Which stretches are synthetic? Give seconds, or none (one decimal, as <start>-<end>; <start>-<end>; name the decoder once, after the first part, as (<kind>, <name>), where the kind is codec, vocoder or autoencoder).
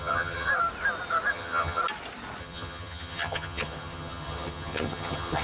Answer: 0.0-0.5 (vocoder, HiFi-GAN); 1.3-1.8; 2.4-5.4